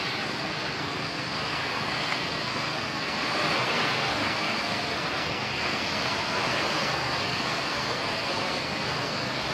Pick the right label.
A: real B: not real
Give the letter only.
B